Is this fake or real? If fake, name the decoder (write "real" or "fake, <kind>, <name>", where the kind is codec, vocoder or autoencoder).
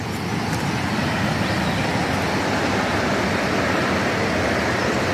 real